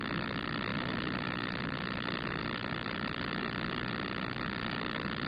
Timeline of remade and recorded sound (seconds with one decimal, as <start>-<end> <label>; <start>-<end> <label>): 0.0-5.3 remade